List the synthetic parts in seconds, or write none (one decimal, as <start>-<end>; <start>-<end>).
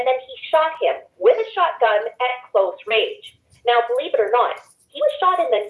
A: 0.0-2.3; 5.0-5.7